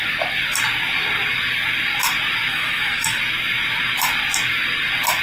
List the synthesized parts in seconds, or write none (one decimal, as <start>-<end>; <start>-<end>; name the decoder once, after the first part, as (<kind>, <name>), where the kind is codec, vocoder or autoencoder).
2.5-3.2 (autoencoder, DAC-VAE)